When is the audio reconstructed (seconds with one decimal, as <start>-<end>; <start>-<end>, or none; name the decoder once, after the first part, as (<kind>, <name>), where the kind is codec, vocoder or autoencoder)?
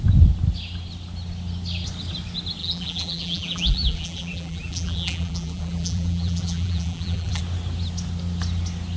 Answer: 2.6-7.4 (vocoder, BigVGAN v2)